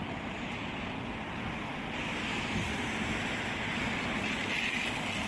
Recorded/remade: recorded